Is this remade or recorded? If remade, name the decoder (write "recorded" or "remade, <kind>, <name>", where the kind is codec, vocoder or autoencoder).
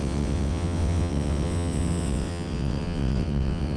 remade, vocoder, WaveNeXt